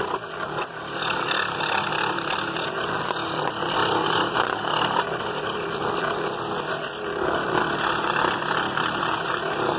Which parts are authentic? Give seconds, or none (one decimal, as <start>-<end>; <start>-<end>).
0.0-3.8; 5.7-9.8